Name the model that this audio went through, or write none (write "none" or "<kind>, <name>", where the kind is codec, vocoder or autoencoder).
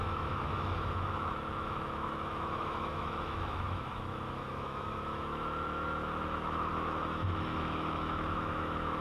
autoencoder, DAC-VAE